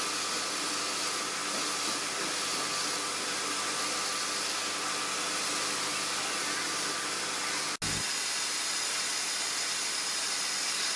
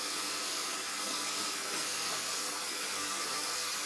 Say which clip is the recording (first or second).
first